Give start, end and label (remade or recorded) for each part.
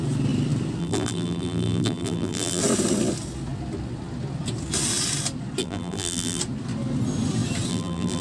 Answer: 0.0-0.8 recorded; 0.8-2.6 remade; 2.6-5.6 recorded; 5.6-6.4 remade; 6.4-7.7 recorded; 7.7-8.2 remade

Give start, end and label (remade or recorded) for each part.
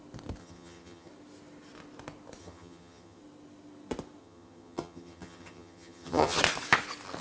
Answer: 0.0-0.4 recorded; 0.4-1.1 remade; 1.1-2.4 recorded; 2.4-3.2 remade; 3.2-4.2 recorded; 4.2-6.4 remade; 6.4-7.2 recorded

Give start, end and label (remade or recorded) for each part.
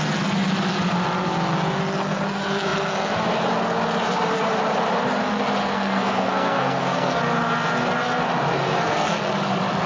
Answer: 0.0-5.6 recorded; 5.6-7.2 remade; 7.2-8.6 recorded; 8.6-9.2 remade; 9.2-9.9 recorded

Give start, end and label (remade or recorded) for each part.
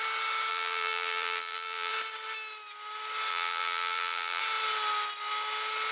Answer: 0.0-0.5 recorded; 0.5-1.9 remade; 1.9-3.3 recorded; 3.3-4.4 remade; 4.4-5.9 recorded